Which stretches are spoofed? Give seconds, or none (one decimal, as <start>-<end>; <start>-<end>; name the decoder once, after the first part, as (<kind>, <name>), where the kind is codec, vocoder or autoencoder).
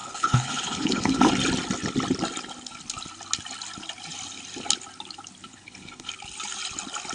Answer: 0.0-1.3 (codec, HILCodec); 5.5-6.1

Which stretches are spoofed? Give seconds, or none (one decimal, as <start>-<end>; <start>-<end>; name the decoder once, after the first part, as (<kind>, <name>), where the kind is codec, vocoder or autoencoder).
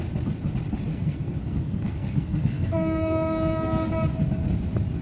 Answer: 0.9-3.9 (codec, SNAC)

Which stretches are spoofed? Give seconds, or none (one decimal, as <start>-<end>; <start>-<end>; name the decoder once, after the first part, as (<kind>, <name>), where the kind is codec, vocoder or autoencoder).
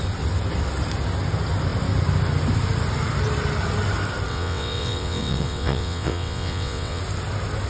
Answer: 4.3-7.0 (vocoder, WaveNeXt)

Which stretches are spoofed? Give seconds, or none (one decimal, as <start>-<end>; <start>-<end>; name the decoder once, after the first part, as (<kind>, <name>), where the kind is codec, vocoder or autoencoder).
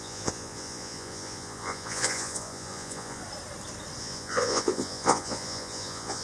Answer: 0.0-3.2 (vocoder, Vocos); 4.0-6.2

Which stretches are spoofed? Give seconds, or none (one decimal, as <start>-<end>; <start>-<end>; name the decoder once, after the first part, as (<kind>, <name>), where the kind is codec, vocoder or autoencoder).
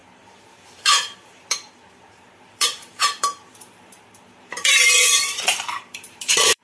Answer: 0.0-6.6 (vocoder, BigVGAN v2)